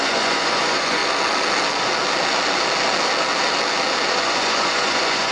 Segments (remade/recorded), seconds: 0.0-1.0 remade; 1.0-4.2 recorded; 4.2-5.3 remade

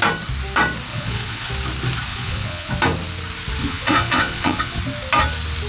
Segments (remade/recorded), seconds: 0.0-0.9 recorded; 0.9-1.5 remade; 1.5-2.1 recorded; 2.1-2.7 remade; 2.7-3.6 recorded; 3.6-4.8 remade; 4.8-5.7 recorded